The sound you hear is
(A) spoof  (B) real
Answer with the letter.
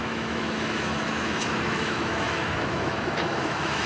A